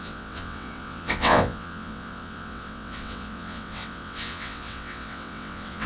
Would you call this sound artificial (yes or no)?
yes